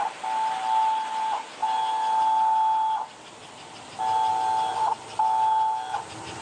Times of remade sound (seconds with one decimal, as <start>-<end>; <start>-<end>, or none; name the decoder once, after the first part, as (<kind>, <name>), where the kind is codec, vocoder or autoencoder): none

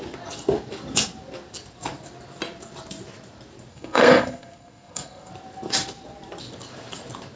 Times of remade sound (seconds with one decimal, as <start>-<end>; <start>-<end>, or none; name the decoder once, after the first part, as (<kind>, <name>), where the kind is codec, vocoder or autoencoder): 3.7-5.3 (codec, SNAC)

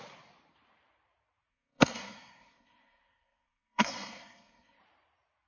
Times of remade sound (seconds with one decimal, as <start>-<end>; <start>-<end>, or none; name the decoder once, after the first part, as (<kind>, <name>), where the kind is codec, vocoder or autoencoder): 1.5-4.8 (codec, SNAC)

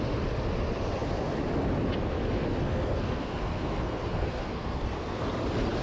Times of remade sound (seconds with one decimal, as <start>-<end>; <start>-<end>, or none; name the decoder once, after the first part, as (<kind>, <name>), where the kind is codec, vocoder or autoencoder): 2.6-5.2 (codec, SNAC)